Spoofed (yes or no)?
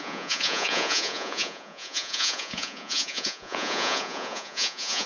yes